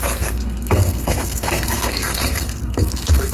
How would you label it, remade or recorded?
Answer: remade